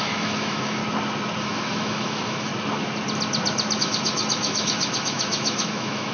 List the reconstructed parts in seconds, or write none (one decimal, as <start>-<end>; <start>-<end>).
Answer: 0.0-0.8; 1.4-2.5; 3.8-6.1